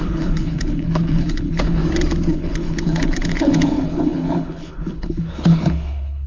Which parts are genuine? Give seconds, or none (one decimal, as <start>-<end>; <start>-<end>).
1.8-2.3